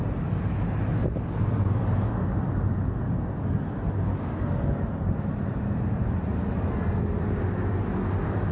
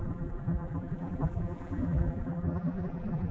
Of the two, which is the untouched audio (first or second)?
first